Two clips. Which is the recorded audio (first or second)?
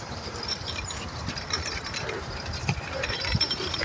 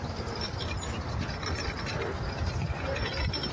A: second